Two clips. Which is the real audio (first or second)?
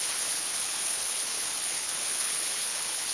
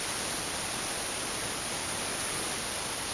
second